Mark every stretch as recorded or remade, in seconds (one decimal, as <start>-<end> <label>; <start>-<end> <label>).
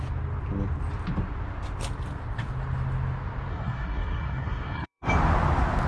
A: 0.0-3.5 recorded; 3.5-5.1 remade; 5.1-5.9 recorded